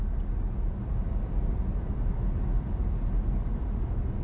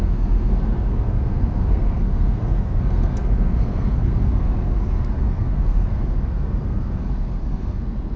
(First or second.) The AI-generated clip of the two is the second